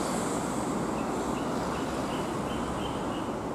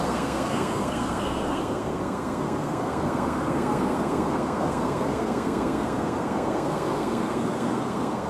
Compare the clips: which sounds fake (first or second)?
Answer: second